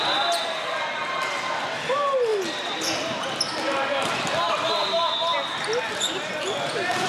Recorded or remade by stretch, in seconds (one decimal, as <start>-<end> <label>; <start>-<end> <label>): 0.0-7.1 recorded